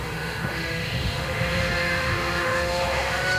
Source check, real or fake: fake